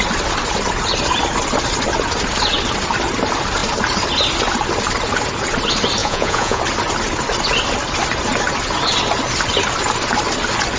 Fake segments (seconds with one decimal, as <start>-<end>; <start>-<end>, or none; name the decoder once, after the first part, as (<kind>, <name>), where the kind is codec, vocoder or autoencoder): 6.0-6.6 (vocoder, Vocos)